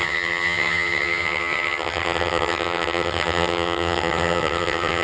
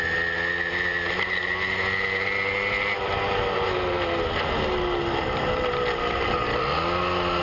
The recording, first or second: second